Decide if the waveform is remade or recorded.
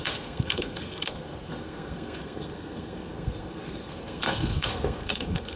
remade